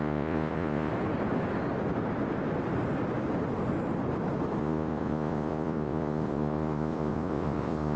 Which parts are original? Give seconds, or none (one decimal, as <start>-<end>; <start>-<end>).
0.9-4.6